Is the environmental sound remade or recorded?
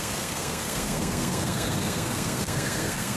remade